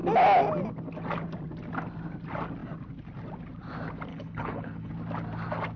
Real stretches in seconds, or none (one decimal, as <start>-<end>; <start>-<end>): 0.0-4.1; 4.9-5.8